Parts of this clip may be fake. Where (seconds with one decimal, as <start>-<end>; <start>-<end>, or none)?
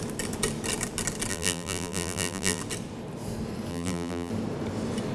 1.3-2.6; 3.7-4.3